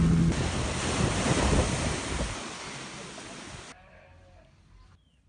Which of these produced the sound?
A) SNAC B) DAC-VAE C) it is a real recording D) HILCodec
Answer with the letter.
C